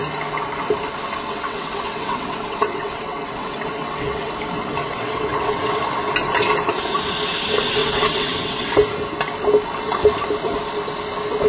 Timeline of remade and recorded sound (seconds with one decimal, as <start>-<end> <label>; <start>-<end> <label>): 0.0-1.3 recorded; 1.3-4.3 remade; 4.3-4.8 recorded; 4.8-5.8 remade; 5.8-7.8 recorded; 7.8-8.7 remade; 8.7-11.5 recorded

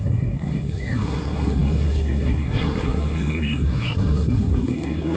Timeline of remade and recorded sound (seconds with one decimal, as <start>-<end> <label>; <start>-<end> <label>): 0.0-5.2 remade

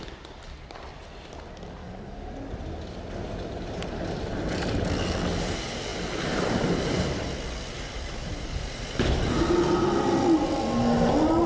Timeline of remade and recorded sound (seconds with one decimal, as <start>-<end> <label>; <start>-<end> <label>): 0.0-1.8 recorded; 1.8-2.3 remade; 2.3-11.5 recorded

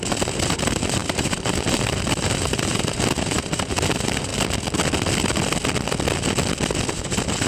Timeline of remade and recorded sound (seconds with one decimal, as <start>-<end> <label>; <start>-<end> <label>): 0.0-4.3 remade; 4.3-6.9 recorded; 6.9-7.5 remade